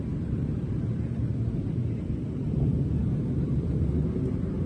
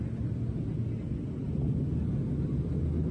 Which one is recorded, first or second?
second